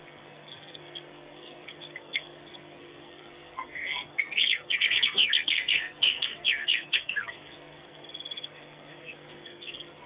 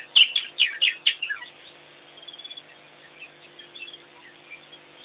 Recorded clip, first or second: second